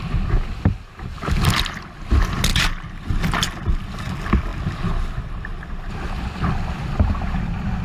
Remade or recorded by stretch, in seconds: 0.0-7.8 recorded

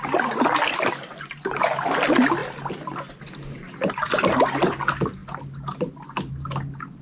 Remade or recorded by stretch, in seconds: 0.0-7.0 recorded

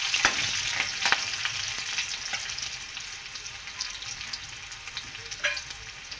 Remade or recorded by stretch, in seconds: 0.0-0.9 recorded; 0.9-1.8 remade; 1.8-6.2 recorded

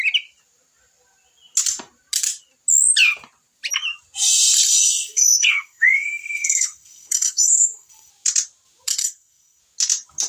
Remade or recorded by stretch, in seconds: 0.0-4.7 recorded; 4.7-8.1 remade; 8.1-9.0 recorded; 9.0-9.6 remade; 9.6-10.3 recorded

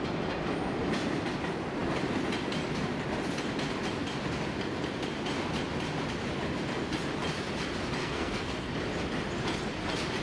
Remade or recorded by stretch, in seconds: 0.0-8.0 recorded; 8.0-8.7 remade; 8.7-10.2 recorded

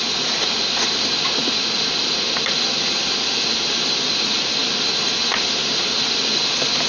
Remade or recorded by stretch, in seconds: 0.0-6.9 recorded

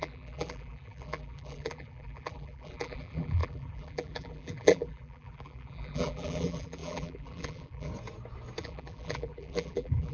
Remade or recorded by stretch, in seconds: 0.0-7.9 remade; 7.9-8.6 recorded; 8.6-10.1 remade